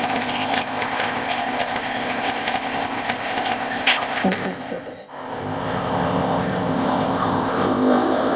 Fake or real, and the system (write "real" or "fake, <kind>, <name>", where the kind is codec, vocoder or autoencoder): fake, codec, ZipCodec